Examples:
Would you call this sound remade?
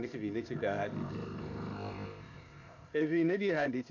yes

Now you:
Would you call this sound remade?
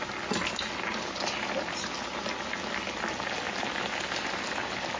no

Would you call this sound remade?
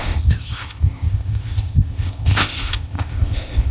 yes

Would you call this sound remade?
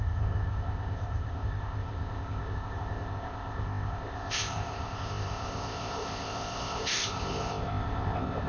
yes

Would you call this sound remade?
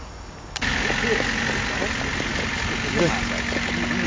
no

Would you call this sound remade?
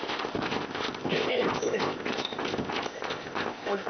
yes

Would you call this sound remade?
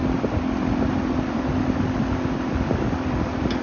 no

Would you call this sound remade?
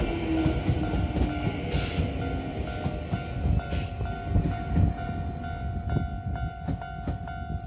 no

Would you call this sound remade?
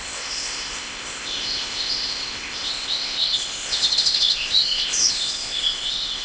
yes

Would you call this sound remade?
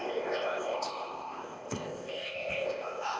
yes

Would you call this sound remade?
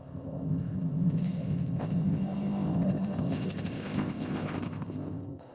yes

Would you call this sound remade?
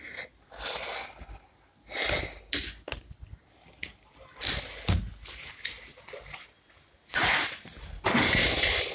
no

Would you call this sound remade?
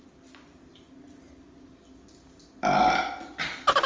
no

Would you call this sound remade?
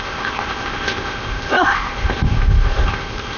yes